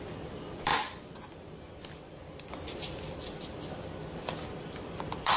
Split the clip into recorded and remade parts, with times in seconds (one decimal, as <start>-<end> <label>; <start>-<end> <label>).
0.0-5.4 recorded